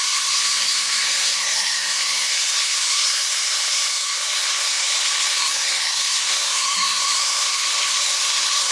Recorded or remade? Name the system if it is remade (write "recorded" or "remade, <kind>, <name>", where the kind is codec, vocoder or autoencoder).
remade, codec, SNAC